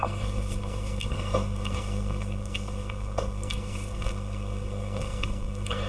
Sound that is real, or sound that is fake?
fake